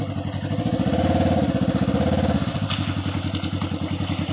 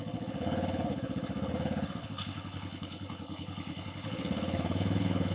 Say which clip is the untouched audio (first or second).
first